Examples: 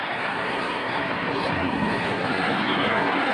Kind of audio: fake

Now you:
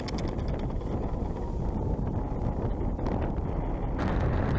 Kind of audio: real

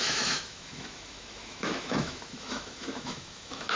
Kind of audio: fake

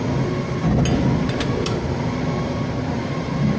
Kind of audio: real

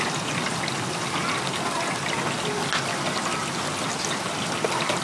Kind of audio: real